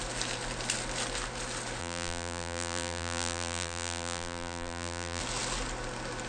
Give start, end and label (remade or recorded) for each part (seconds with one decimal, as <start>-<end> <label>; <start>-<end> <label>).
0.0-1.8 recorded; 1.8-5.2 remade; 5.2-6.3 recorded